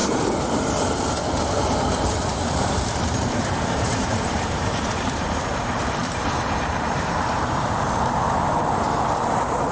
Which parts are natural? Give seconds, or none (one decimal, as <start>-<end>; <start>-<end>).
0.0-2.3